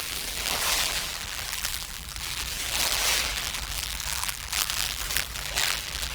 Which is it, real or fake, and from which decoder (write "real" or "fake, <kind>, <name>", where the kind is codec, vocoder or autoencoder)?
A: fake, vocoder, BigVGAN v2